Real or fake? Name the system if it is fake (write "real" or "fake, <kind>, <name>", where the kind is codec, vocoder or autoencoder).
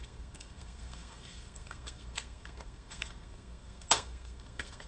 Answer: fake, codec, SNAC